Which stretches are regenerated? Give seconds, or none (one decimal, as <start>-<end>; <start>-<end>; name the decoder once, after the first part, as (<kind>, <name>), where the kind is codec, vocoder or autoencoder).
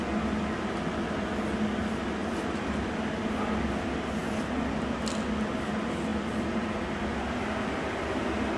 2.2-2.8 (vocoder, BigVGAN v2)